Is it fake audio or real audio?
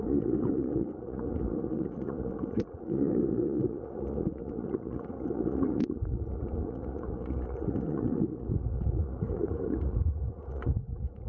fake